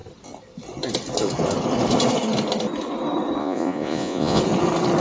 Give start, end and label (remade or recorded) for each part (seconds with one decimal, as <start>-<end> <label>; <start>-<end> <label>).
0.0-3.4 recorded; 3.4-4.4 remade; 4.4-5.0 recorded